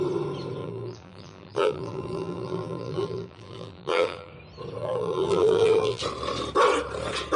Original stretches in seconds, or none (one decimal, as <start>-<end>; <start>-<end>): 0.0-0.6; 4.3-4.8; 6.0-7.4